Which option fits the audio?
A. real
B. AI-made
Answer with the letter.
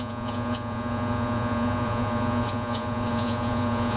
B